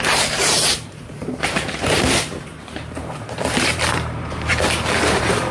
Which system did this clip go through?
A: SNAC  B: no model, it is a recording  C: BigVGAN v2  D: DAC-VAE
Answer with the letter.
C